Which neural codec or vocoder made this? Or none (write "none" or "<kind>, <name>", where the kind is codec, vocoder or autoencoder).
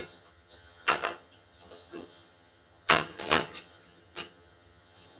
vocoder, HiFi-GAN